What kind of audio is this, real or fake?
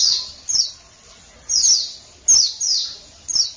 real